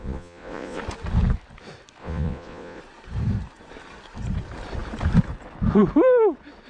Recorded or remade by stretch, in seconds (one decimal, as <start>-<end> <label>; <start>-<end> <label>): 0.0-0.8 remade; 0.8-2.0 recorded; 2.0-2.8 remade; 2.8-6.7 recorded